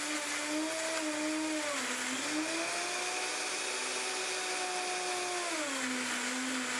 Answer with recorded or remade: recorded